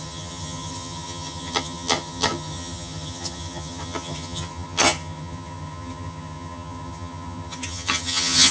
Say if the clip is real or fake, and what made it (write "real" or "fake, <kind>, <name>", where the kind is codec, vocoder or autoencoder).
fake, vocoder, HiFi-GAN